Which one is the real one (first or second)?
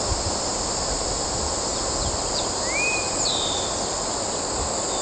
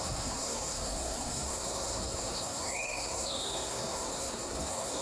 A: first